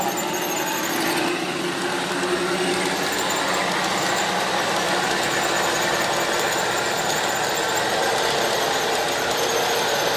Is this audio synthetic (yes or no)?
no